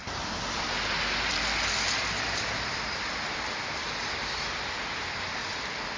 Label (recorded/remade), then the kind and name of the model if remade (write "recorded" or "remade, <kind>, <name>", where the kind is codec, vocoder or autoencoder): recorded